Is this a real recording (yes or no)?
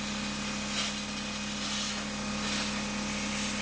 yes